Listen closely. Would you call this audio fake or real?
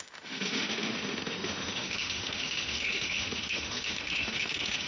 fake